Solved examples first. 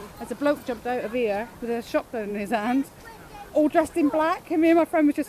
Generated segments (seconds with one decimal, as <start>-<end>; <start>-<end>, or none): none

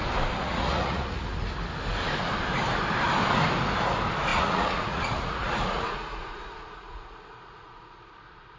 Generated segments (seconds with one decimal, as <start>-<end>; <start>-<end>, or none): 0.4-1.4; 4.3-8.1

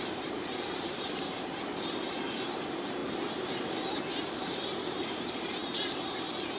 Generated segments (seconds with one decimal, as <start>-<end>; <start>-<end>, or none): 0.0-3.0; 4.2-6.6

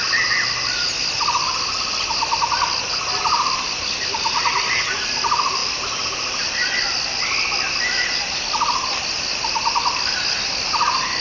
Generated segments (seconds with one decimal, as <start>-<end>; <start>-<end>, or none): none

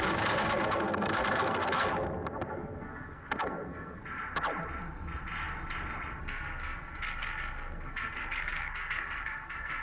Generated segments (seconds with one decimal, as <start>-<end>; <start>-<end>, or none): 0.0-1.9; 2.5-4.0; 6.2-9.8

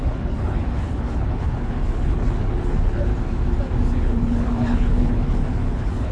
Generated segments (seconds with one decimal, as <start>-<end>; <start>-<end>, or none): 0.0-3.1; 4.0-6.1

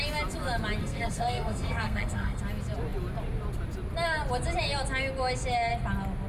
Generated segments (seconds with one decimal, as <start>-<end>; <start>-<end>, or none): 0.8-2.4

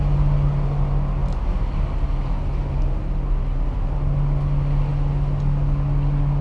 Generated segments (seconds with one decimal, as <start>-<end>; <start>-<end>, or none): none